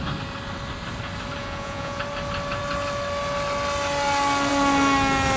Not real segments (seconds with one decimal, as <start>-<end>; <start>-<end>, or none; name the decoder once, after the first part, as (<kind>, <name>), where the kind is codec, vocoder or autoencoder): 1.4-2.0 (vocoder, Vocos)